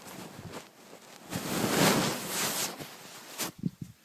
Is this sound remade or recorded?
recorded